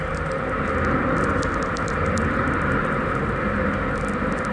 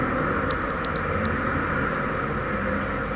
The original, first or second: second